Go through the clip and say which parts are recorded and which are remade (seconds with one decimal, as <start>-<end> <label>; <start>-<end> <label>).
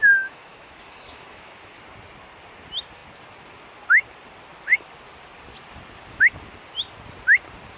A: 0.0-1.5 remade; 1.5-7.8 recorded